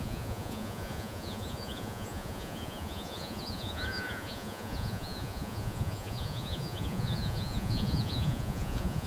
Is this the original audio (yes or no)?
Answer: no